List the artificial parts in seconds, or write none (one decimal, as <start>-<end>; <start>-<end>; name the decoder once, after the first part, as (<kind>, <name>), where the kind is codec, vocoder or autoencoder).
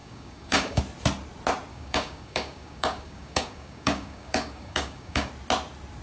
0.0-0.8 (codec, DAC); 1.7-5.3